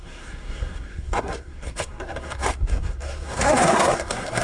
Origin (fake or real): fake